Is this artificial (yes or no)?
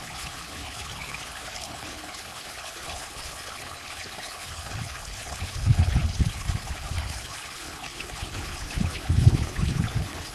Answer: yes